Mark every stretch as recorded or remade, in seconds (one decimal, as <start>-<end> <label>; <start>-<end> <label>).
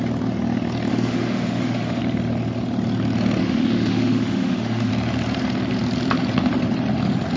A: 0.0-0.9 recorded; 0.9-2.0 remade; 2.0-3.4 recorded; 3.4-4.9 remade; 4.9-7.4 recorded